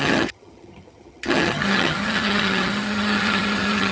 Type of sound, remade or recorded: remade